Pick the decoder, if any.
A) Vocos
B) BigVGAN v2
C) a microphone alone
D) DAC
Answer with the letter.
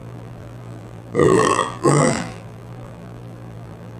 B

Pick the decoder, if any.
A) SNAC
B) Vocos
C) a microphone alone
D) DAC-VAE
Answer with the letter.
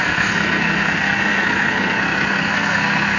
A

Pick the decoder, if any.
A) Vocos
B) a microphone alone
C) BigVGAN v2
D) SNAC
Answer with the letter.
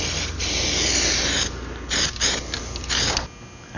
B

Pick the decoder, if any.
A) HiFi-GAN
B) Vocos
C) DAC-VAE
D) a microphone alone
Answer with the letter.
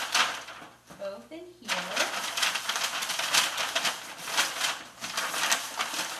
D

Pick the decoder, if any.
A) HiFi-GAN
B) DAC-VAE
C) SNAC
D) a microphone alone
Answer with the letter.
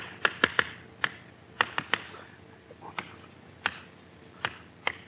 D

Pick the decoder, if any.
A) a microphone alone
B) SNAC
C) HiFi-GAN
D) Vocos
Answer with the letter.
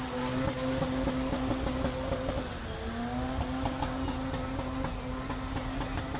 A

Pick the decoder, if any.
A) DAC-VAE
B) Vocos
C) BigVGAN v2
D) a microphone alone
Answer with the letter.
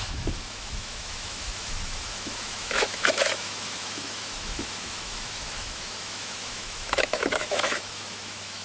A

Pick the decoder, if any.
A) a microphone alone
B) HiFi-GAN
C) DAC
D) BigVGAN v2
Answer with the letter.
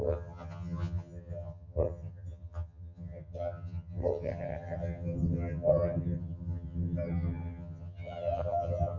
B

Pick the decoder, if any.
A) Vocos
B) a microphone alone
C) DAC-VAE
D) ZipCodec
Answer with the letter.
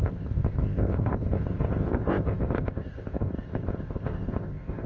D